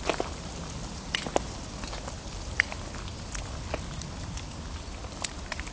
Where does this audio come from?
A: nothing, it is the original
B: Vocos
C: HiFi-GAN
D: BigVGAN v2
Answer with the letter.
A